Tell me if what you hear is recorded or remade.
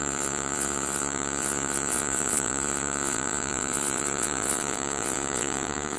remade